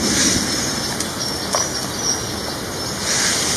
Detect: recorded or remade recorded